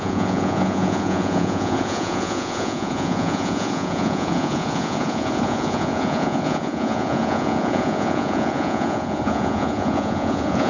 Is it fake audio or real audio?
fake